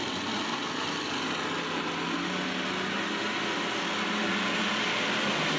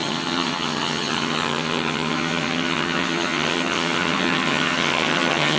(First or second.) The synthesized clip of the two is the second